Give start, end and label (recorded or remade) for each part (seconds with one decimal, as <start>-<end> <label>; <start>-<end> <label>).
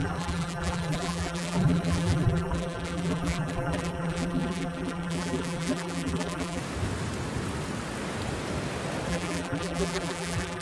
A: 0.0-6.6 remade; 6.6-9.1 recorded; 9.1-10.6 remade